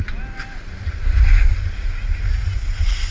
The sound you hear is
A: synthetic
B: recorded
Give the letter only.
B